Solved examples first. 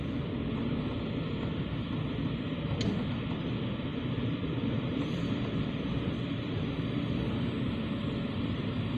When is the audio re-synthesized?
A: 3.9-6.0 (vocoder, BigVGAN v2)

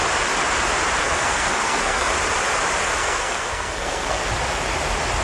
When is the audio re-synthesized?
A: 1.0-2.1 (codec, SNAC); 3.0-4.2

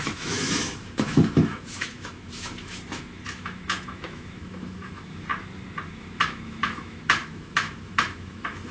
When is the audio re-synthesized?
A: 0.0-5.3 (autoencoder, DAC-VAE); 5.8-8.7